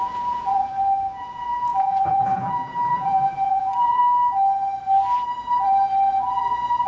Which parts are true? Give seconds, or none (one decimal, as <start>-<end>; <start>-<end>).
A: 0.7-1.2; 4.0-6.1